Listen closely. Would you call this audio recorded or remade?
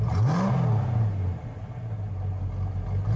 recorded